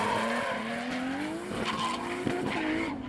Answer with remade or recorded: recorded